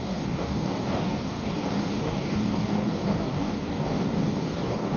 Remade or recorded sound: remade